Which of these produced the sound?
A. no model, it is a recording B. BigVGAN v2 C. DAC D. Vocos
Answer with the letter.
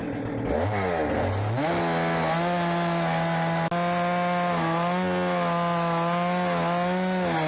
A